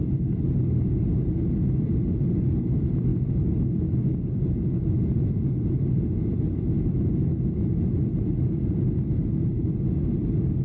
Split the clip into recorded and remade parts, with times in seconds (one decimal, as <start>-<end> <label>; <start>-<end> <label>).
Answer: 0.0-8.1 recorded; 8.1-8.9 remade; 8.9-10.6 recorded